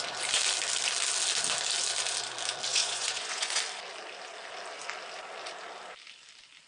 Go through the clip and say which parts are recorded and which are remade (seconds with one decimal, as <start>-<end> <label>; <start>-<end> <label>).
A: 0.0-2.7 recorded; 2.7-3.6 remade; 3.6-6.7 recorded